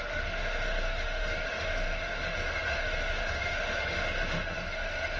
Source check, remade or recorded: remade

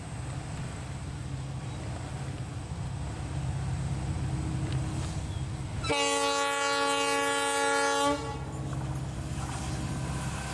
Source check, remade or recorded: recorded